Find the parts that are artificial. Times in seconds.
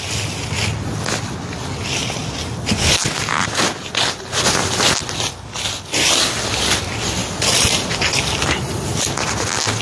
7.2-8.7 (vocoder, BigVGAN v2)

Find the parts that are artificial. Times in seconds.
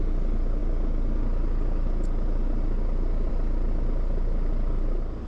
none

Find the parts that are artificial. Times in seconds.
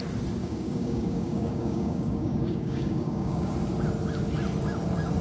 0.4-3.5 (codec, DAC)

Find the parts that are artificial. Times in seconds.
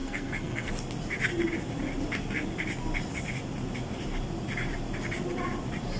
0.0-0.7 (codec, SNAC)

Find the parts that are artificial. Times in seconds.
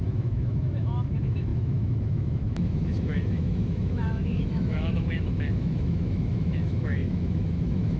0.0-8.0 (autoencoder, DAC-VAE)